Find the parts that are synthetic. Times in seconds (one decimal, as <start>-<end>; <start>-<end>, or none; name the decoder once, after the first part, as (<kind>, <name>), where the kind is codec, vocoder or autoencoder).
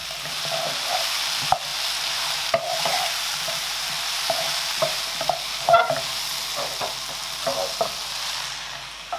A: 0.0-1.0 (vocoder, BigVGAN v2); 1.7-5.9